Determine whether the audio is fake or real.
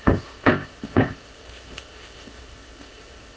fake